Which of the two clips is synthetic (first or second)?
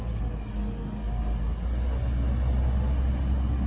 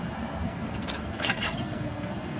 second